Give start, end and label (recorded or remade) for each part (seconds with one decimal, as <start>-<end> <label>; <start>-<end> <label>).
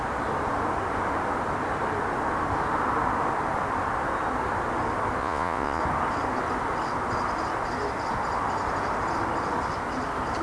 0.0-5.2 recorded; 5.2-5.8 remade; 5.8-10.4 recorded